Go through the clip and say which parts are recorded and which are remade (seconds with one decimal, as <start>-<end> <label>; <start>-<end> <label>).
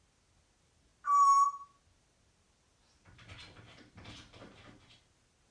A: 0.0-5.5 recorded